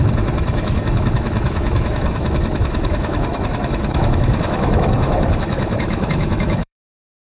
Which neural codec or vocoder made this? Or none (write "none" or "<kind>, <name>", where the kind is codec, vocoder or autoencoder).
autoencoder, DAC-VAE